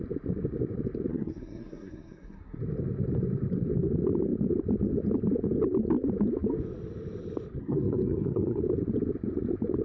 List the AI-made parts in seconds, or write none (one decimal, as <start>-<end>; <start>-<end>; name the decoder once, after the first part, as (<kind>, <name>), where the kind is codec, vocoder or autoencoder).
1.1-2.6 (codec, SNAC); 7.6-8.6